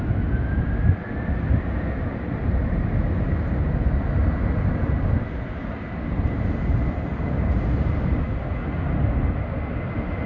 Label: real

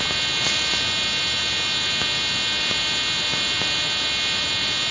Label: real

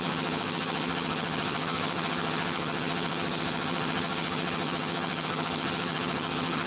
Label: fake